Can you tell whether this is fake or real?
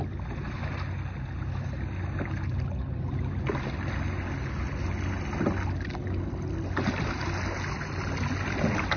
real